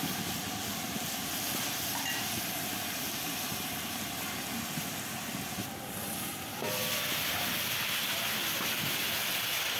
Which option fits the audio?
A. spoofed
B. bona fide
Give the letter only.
B